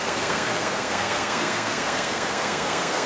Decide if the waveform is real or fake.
fake